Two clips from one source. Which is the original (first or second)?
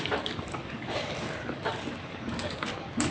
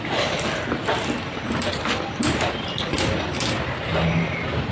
second